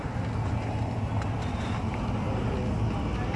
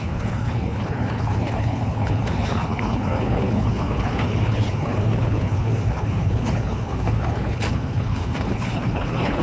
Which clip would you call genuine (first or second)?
first